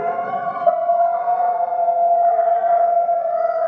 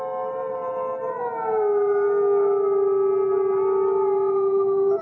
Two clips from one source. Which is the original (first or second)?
second